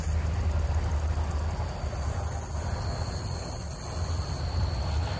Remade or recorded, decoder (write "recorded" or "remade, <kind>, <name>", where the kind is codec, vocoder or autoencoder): recorded